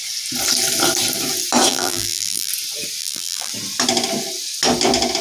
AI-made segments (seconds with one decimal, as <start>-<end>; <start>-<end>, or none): 1.7-2.5; 3.0-3.5